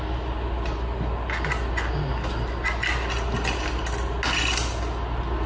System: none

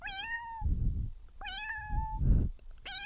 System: none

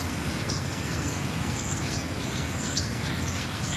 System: codec, SNAC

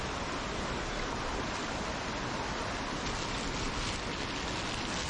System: none